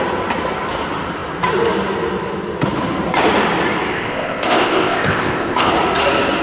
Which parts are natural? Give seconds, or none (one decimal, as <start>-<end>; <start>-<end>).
0.0-3.9; 5.7-6.4